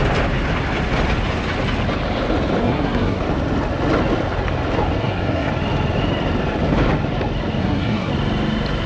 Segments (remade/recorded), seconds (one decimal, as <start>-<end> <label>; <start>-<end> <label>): 0.0-2.6 recorded; 2.6-3.2 remade; 3.2-5.0 recorded; 5.0-5.5 remade; 5.5-7.6 recorded; 7.6-8.1 remade; 8.1-8.9 recorded